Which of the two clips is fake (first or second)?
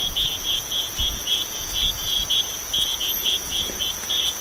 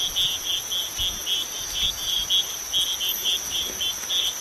first